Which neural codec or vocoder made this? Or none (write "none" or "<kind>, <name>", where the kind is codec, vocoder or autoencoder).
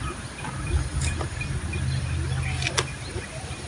none